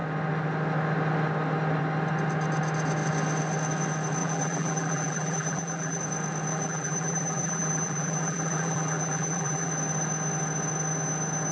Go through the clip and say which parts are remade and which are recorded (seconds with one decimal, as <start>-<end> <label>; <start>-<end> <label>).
0.0-4.2 recorded; 4.2-6.0 remade; 6.0-6.5 recorded; 6.5-9.7 remade; 9.7-11.5 recorded